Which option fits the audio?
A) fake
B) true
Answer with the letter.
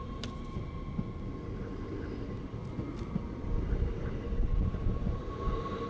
B